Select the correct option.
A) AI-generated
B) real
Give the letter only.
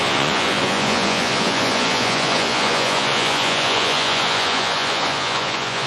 A